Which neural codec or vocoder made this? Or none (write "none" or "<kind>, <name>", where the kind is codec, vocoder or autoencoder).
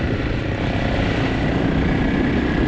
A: none